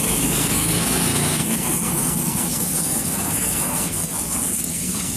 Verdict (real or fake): fake